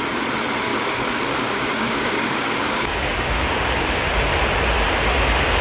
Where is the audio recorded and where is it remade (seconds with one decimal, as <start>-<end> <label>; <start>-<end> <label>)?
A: 0.0-0.7 recorded; 0.7-3.5 remade; 3.5-5.6 recorded